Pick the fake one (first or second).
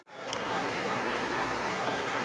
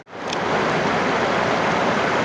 first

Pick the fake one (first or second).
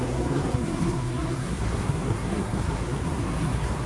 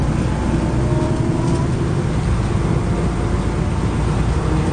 first